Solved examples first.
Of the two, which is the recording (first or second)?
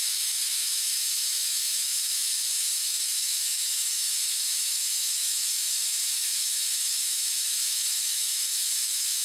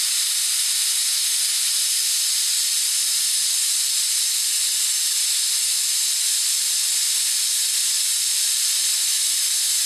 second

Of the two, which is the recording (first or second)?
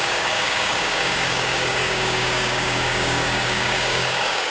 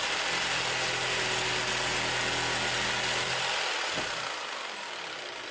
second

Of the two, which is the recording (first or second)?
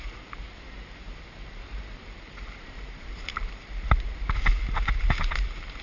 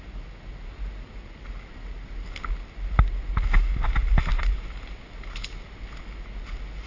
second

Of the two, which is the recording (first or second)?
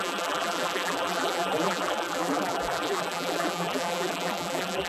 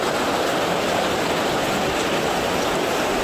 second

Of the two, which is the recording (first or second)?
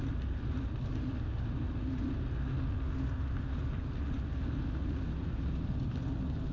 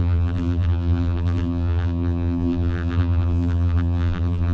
first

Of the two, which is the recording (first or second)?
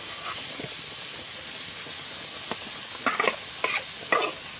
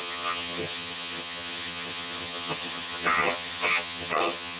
first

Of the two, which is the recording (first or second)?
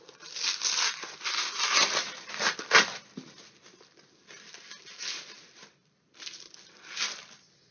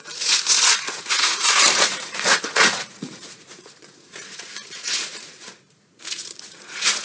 first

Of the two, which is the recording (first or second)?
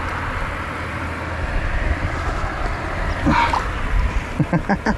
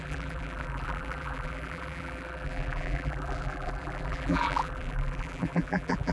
first